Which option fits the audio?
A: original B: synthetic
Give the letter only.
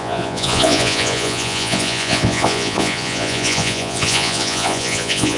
B